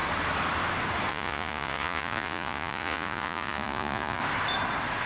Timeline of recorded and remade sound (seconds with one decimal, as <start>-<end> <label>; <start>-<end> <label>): 0.0-1.1 recorded; 1.1-4.2 remade; 4.2-5.1 recorded